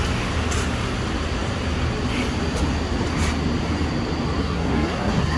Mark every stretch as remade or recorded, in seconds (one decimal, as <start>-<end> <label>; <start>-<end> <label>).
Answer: 0.0-4.4 recorded; 4.4-5.4 remade